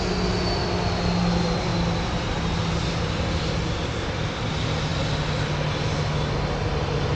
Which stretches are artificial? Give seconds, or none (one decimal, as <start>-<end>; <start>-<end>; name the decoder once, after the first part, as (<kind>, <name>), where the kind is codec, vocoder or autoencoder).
none